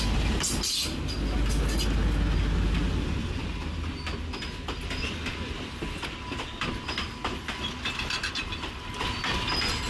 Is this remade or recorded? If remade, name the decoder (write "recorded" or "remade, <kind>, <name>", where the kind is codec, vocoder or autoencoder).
recorded